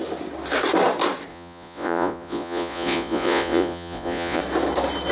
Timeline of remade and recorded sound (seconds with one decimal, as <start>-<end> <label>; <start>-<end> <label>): 0.0-1.3 recorded; 1.3-4.4 remade; 4.4-5.1 recorded